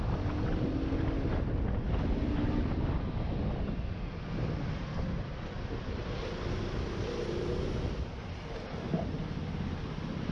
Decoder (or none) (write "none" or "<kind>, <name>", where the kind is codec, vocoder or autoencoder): none